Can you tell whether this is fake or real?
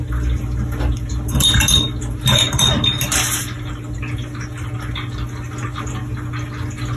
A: real